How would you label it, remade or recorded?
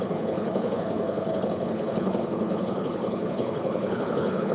remade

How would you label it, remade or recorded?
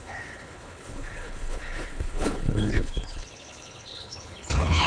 remade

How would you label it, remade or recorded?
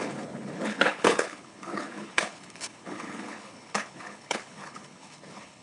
remade